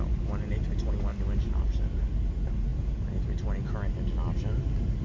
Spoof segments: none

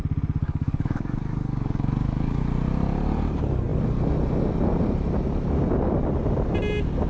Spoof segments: 0.4-2.4 (codec, DAC)

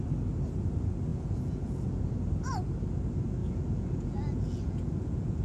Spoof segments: 1.1-2.0 (vocoder, Vocos); 3.4-5.4

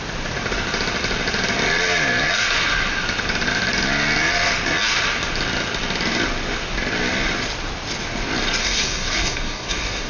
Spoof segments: 8.6-10.1 (codec, DAC)